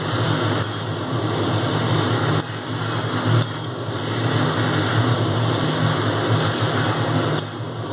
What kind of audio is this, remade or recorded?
recorded